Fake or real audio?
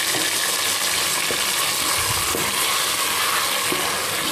real